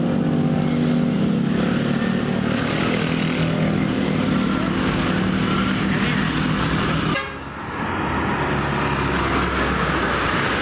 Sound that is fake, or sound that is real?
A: real